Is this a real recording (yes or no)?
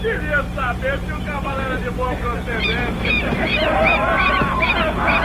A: no